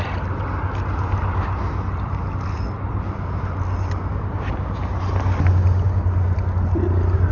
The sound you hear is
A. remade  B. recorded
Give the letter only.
B